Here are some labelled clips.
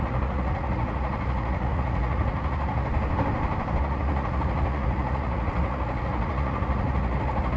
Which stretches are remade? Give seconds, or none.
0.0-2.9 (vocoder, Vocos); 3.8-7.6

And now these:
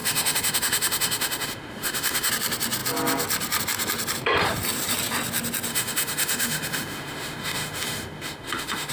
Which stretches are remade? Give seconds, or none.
0.0-2.3 (autoencoder, DAC-VAE); 5.7-8.9

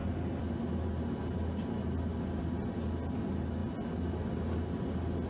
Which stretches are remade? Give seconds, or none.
none